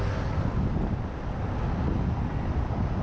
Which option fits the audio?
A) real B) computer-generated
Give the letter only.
A